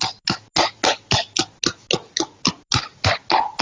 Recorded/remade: recorded